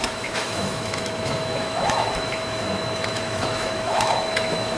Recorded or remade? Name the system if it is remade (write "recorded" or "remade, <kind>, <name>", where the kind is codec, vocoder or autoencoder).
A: remade, autoencoder, DAC-VAE